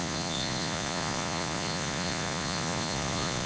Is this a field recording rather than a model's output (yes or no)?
no